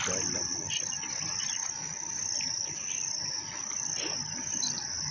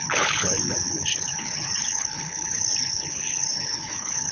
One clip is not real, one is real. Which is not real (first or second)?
second